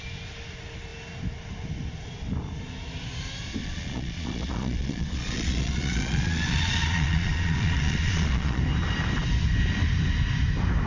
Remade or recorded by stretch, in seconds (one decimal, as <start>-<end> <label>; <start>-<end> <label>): 0.0-3.6 recorded; 3.6-8.6 remade; 8.6-10.9 recorded